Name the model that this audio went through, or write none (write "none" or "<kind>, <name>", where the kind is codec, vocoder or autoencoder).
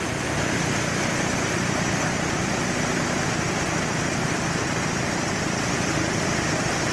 none